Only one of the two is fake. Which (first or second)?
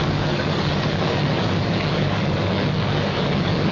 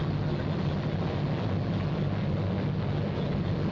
first